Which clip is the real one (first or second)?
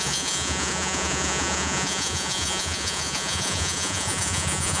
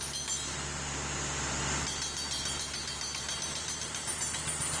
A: second